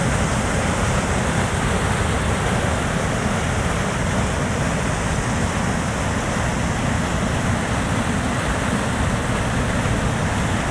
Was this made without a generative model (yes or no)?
yes